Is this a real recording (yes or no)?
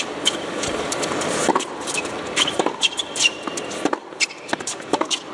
no